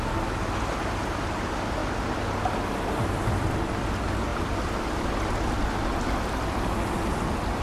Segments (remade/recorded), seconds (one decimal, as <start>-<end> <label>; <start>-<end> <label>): 0.0-7.6 recorded